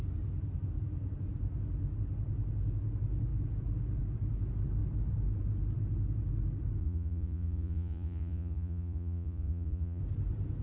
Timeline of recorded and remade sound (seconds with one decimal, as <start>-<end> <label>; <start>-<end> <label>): 0.0-6.8 recorded; 6.8-10.0 remade; 10.0-10.6 recorded